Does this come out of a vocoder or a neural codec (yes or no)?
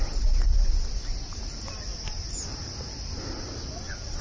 no